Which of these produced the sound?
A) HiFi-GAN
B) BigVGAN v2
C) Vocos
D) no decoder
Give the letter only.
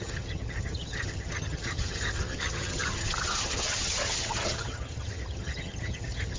A